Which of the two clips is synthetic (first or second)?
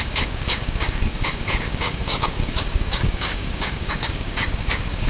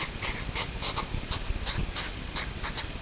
first